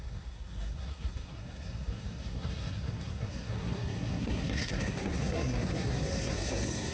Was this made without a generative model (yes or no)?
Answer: no